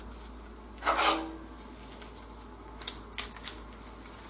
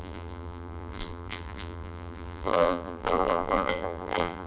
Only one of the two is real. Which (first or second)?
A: first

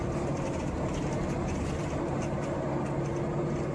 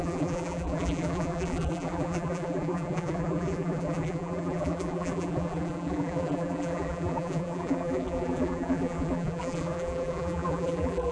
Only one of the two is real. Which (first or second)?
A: first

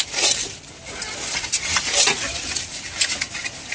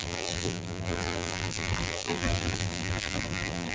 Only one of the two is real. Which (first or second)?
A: first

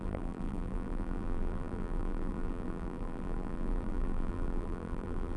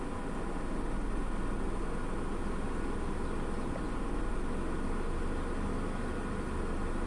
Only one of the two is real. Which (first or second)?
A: second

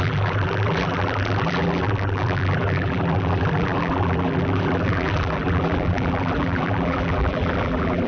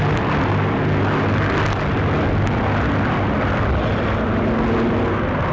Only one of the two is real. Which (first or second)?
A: second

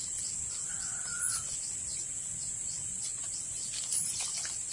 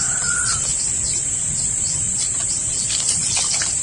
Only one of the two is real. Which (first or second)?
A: first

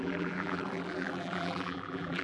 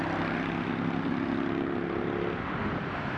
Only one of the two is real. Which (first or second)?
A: second